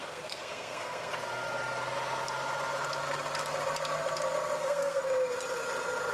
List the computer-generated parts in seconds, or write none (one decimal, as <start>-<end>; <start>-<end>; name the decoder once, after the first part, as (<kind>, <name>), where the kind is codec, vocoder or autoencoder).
0.0-1.1 (codec, SNAC); 4.6-5.0